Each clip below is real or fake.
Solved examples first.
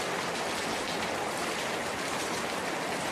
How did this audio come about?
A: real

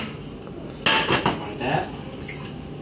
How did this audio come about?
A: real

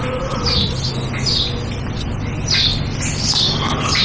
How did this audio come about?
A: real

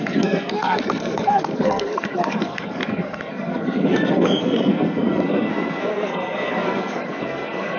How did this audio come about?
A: fake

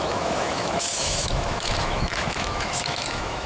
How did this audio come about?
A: fake